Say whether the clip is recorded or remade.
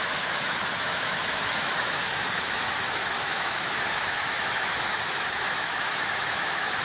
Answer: remade